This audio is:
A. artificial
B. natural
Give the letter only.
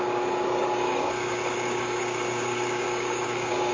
A